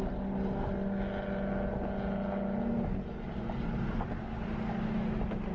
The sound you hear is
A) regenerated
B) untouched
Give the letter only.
B